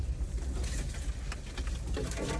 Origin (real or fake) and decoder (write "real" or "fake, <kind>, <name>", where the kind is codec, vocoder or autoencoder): real